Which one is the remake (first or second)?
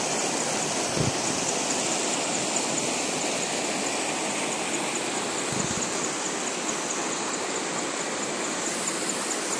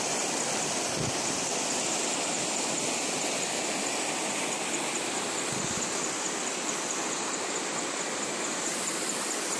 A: second